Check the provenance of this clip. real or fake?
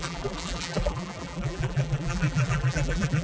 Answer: fake